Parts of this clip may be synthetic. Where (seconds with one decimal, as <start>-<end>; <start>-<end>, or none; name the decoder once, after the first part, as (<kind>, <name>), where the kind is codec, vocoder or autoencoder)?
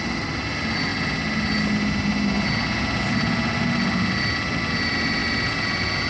none